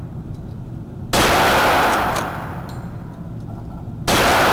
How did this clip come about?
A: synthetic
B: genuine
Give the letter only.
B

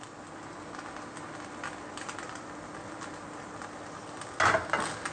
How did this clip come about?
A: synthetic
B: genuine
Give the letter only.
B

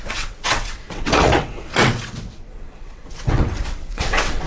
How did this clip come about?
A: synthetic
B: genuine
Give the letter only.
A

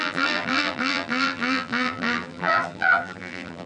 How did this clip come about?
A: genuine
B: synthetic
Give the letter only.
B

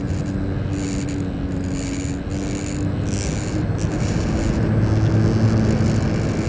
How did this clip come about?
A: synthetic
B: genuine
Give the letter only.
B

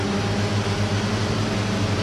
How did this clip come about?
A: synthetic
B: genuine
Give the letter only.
B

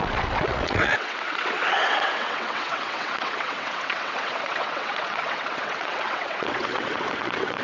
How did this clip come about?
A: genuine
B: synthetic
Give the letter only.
B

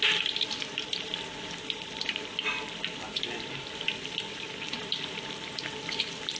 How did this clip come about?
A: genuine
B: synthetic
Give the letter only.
B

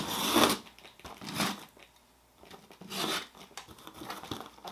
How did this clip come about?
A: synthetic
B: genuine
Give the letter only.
B